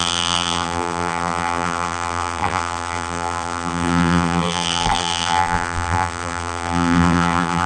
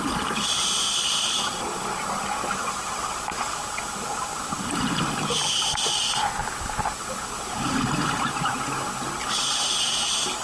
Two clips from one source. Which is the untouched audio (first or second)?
second